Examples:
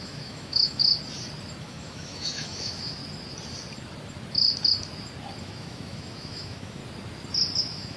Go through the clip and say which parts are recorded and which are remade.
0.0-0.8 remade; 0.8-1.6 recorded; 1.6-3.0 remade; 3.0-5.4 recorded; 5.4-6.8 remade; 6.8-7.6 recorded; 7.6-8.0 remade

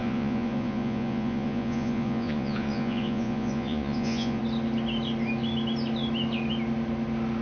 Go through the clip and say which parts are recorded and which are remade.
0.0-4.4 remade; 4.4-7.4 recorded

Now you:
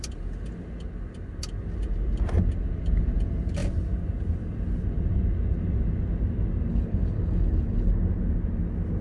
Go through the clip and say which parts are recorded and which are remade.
0.0-6.7 recorded; 6.7-7.9 remade; 7.9-9.0 recorded

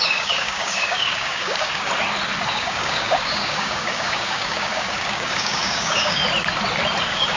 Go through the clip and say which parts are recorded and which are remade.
0.0-1.9 remade; 1.9-2.5 recorded; 2.5-6.2 remade; 6.2-7.0 recorded; 7.0-7.4 remade